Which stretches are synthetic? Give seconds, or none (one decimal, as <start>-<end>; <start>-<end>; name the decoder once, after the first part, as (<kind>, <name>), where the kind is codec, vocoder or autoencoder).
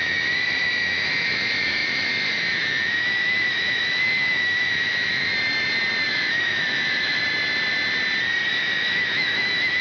0.0-5.3 (autoencoder, DAC-VAE); 6.1-7.2; 8.5-9.8